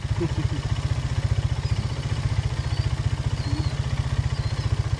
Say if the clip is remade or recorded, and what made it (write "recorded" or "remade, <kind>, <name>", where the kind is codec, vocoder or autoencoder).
recorded